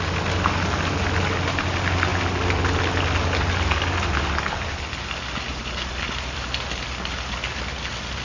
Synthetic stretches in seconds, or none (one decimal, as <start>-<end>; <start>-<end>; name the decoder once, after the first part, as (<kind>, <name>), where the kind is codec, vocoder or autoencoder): none

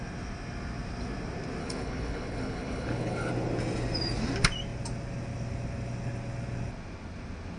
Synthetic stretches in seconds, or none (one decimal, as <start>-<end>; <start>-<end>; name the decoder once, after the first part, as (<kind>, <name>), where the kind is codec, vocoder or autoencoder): 1.6-3.3 (codec, HILCodec)

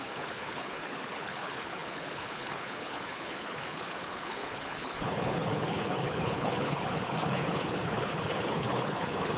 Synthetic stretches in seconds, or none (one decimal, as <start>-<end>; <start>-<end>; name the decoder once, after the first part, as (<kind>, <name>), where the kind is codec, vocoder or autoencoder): 0.0-9.4 (codec, HILCodec)

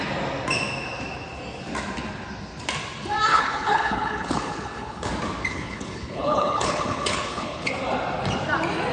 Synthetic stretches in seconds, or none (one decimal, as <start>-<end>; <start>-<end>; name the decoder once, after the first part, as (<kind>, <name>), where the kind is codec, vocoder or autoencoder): 3.3-5.1 (codec, HILCodec); 5.5-7.7

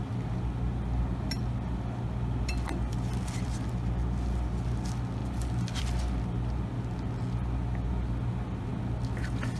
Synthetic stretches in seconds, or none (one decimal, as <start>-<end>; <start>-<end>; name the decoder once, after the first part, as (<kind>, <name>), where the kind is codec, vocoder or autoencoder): none

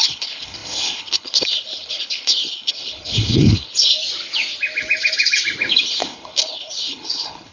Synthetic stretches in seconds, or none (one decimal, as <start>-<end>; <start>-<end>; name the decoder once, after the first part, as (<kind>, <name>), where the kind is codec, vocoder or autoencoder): 0.0-3.9 (codec, HILCodec); 5.7-7.5

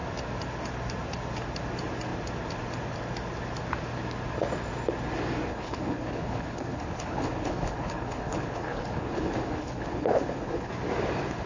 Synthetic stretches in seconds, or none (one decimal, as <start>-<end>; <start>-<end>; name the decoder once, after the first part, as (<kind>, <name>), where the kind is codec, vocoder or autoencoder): 5.5-10.7 (codec, HILCodec)

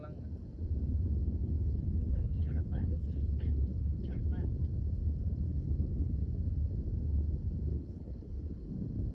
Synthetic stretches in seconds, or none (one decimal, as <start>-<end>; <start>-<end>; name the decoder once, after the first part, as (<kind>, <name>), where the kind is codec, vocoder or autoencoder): 1.2-4.2 (codec, HILCodec); 5.5-6.2; 7.7-8.7